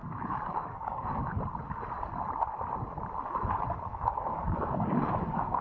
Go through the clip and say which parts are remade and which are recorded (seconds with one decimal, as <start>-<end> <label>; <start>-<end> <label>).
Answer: 0.0-1.4 remade; 1.4-3.9 recorded; 3.9-5.6 remade

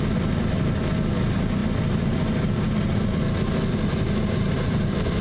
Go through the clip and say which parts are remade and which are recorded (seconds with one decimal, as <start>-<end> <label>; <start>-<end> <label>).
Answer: 0.0-5.2 recorded

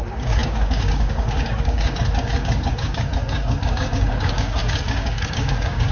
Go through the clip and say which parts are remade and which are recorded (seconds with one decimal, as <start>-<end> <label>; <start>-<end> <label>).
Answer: 0.0-5.9 remade

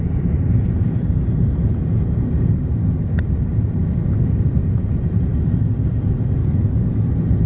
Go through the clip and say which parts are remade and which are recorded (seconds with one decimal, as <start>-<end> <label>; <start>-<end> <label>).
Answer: 0.0-6.4 recorded; 6.4-7.1 remade; 7.1-7.5 recorded

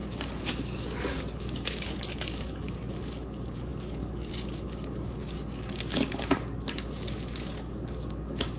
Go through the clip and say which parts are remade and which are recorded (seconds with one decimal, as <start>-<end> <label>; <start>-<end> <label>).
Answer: 0.0-8.6 remade